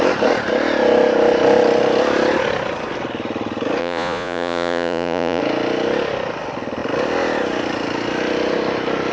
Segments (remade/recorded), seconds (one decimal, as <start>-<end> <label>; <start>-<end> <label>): 0.0-3.8 recorded; 3.8-5.4 remade; 5.4-9.1 recorded

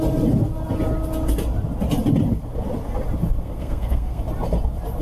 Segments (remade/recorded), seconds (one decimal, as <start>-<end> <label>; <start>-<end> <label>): 0.0-3.4 recorded; 3.4-4.2 remade; 4.2-5.0 recorded

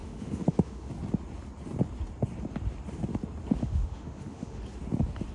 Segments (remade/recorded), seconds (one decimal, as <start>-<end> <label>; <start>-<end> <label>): 0.0-0.9 remade; 0.9-3.6 recorded; 3.6-4.6 remade; 4.6-5.3 recorded

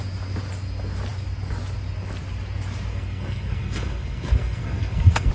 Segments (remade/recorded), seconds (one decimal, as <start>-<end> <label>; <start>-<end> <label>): 0.0-2.9 recorded; 2.9-5.3 remade

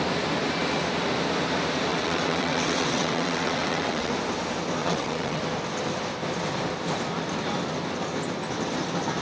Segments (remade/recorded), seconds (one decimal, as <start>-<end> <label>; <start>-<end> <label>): 0.0-1.9 recorded; 1.9-4.1 remade; 4.1-4.8 recorded; 4.8-5.4 remade; 5.4-9.2 recorded

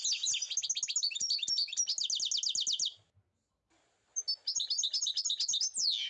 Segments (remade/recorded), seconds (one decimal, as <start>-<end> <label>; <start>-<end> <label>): 0.0-6.1 recorded

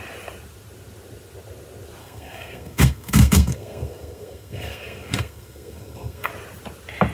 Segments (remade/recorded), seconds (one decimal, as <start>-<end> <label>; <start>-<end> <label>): 0.0-2.0 recorded; 2.0-6.3 remade; 6.3-7.1 recorded

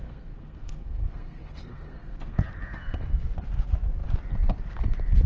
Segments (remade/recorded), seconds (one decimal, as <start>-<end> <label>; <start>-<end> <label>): 0.0-2.4 remade; 2.4-5.3 recorded